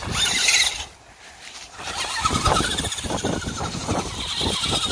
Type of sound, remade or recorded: recorded